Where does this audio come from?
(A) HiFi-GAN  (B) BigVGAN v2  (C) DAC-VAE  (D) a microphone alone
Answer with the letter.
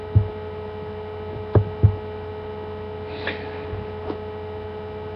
D